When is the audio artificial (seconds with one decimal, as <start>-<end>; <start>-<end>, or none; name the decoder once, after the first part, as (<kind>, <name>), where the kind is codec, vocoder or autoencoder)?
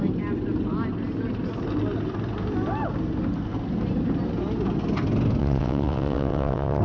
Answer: 5.4-6.8 (vocoder, WaveNeXt)